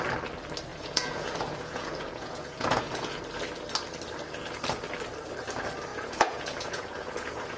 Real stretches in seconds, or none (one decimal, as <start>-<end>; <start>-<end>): 0.0-0.7; 3.2-5.9